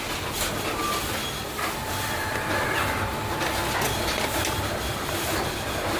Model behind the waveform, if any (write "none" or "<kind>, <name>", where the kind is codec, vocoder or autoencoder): none